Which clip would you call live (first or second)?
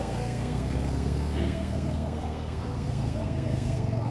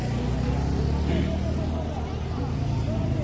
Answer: second